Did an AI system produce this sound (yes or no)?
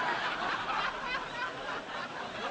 no